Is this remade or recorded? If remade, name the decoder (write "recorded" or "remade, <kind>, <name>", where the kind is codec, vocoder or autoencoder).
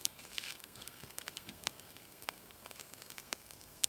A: remade, codec, SNAC